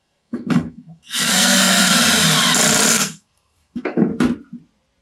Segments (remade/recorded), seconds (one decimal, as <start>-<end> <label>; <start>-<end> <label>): 0.0-1.9 remade; 1.9-2.9 recorded; 2.9-4.1 remade; 4.1-5.0 recorded